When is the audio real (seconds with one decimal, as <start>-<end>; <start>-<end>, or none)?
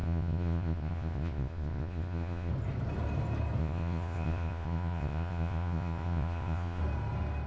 2.5-3.6; 6.8-7.5